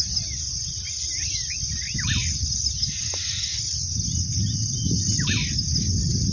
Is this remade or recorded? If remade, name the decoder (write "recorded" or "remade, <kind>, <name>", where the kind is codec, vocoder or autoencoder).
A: recorded